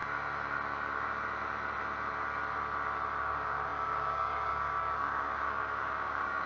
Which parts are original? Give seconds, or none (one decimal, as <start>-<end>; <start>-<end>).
0.0-3.2